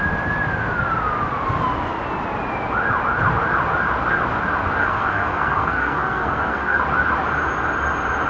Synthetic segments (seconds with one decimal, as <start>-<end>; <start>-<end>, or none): 4.8-6.8